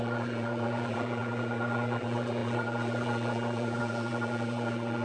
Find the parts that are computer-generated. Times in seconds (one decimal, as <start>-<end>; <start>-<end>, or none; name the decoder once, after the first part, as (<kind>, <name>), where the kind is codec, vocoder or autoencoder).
0.0-5.0 (vocoder, BigVGAN v2)